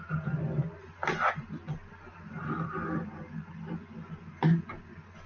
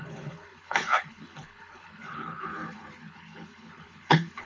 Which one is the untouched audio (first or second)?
first